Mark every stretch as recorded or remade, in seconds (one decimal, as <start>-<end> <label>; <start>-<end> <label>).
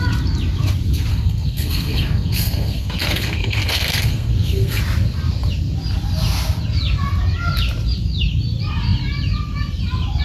0.0-1.1 recorded; 1.1-4.8 remade; 4.8-10.2 recorded